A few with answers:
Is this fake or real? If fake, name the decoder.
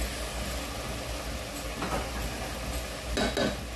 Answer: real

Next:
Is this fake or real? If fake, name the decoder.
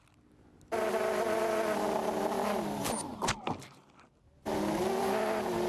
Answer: real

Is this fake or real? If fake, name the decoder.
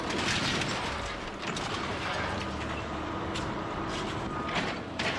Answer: real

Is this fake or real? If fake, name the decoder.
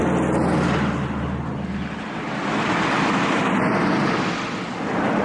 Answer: real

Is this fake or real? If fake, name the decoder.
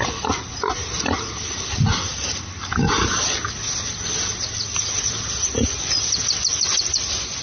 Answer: real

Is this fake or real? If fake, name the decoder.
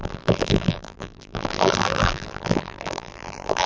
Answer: fake, vocoder, BigVGAN v2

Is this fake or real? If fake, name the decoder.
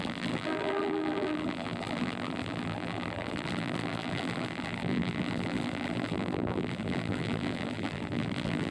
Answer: fake, vocoder, BigVGAN v2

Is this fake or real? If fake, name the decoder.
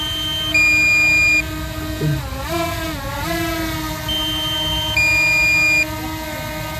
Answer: real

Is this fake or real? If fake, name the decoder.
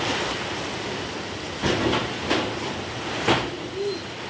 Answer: real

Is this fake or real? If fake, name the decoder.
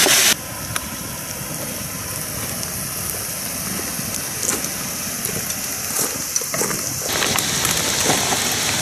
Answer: real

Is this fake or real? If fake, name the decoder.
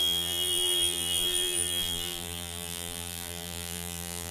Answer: fake, vocoder, BigVGAN v2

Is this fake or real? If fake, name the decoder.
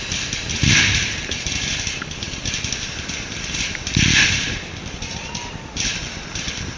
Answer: fake, vocoder, BigVGAN v2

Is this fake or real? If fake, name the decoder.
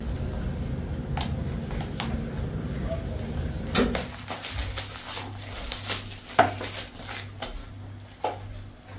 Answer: real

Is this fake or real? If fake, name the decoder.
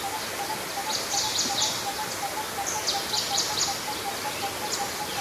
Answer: real